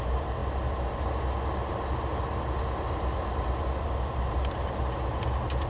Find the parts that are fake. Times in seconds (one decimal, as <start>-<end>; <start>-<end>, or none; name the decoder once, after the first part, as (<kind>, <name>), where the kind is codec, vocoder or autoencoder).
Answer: none